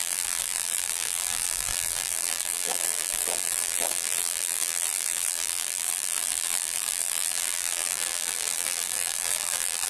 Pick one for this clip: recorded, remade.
remade